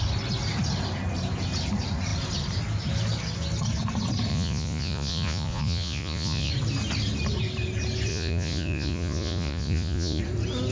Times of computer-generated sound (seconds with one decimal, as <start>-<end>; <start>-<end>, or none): 4.3-6.5; 8.1-10.2